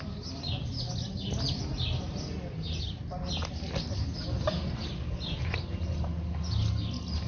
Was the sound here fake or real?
real